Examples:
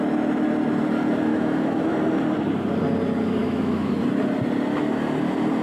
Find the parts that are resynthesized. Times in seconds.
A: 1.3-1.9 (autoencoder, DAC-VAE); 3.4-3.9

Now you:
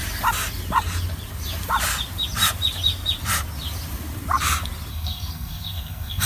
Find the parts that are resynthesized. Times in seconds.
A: 4.9-6.3 (codec, SNAC)

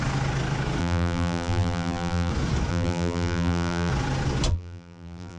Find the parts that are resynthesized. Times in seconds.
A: 0.8-2.3 (vocoder, BigVGAN v2); 2.7-3.9; 4.5-5.4

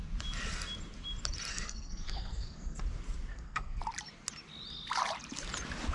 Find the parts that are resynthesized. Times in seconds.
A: 1.5-2.8 (codec, SNAC); 3.3-3.8

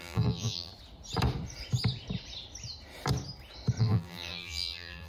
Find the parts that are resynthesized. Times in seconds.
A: 0.0-0.7 (vocoder, BigVGAN v2); 3.8-5.1

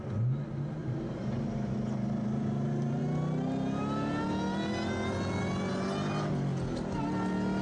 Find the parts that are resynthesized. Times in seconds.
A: 0.8-3.0 (vocoder, BigVGAN v2)

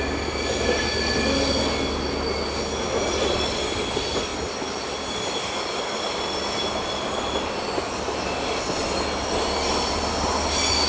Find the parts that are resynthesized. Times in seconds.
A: none